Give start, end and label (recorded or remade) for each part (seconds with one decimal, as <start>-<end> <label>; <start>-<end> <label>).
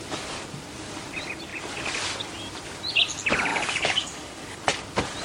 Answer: 0.0-3.5 recorded; 3.5-4.6 remade; 4.6-5.2 recorded